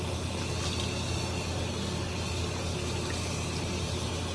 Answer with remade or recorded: recorded